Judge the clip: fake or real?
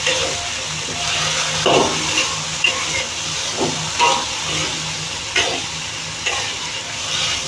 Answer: real